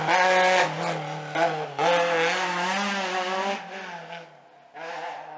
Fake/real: real